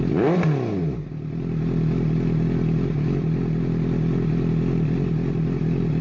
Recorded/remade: recorded